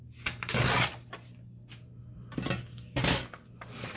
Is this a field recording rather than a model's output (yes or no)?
yes